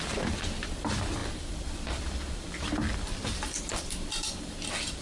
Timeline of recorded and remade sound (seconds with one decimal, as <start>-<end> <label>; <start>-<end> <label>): 0.0-5.0 remade